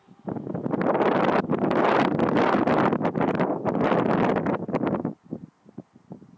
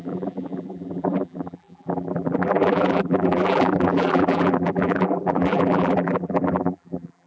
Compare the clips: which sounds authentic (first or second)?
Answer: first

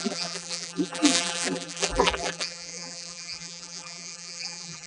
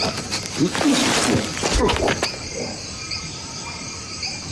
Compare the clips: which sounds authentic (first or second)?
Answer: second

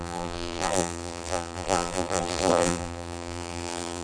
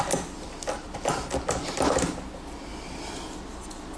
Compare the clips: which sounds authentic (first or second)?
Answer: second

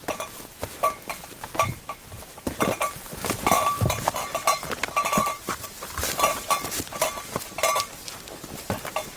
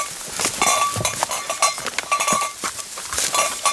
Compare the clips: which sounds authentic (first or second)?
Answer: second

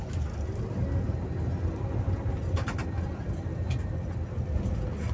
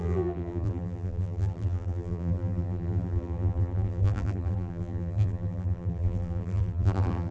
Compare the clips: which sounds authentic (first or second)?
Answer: first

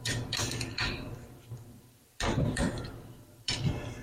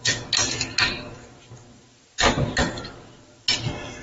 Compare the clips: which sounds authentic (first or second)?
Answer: second